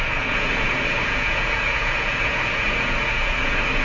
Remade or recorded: remade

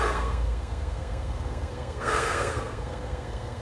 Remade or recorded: remade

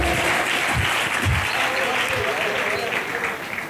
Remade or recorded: recorded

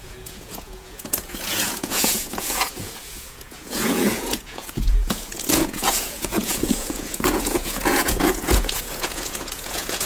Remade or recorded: remade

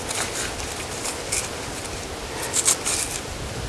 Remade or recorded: recorded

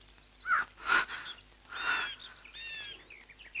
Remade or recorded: recorded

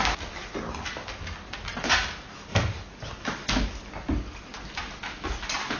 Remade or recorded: recorded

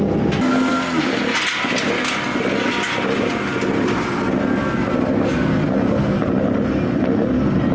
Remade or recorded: recorded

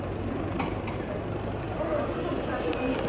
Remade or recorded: recorded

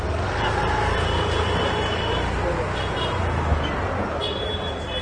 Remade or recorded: recorded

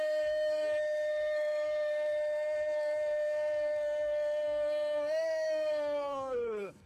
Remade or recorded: remade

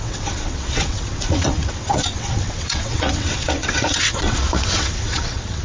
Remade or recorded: remade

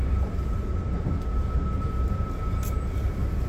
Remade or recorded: recorded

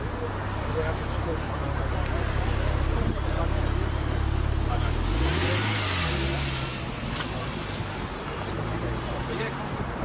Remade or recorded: recorded